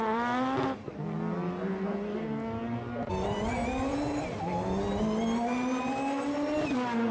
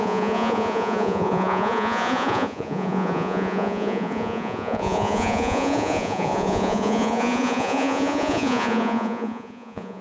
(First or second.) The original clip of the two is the first